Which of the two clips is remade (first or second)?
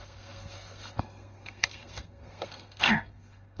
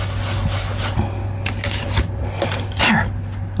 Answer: first